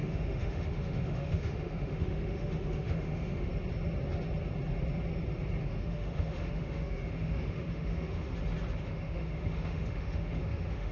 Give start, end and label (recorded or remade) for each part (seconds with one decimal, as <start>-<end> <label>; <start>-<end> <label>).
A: 0.0-3.5 remade; 3.5-5.6 recorded; 5.6-8.3 remade; 8.3-8.8 recorded; 8.8-10.9 remade